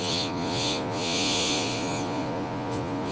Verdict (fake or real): fake